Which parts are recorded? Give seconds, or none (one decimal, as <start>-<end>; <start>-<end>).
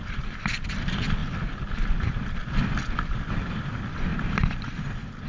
1.2-3.1; 4.1-5.3